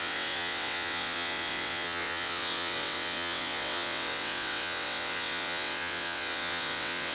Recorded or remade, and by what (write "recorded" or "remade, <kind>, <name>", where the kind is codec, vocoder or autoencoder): remade, vocoder, WaveNeXt